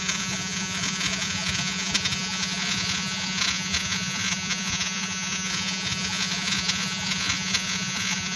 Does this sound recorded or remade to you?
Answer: remade